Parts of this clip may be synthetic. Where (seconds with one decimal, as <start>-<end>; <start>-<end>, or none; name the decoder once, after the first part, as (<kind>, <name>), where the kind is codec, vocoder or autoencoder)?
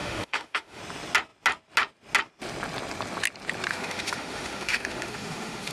0.0-0.8 (autoencoder, DAC-VAE); 3.7-5.7